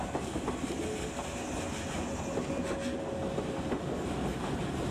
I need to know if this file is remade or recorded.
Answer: recorded